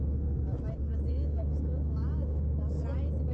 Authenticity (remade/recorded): recorded